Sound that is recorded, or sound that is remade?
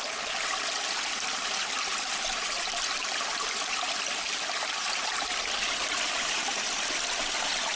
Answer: recorded